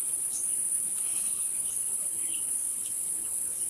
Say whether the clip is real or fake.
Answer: fake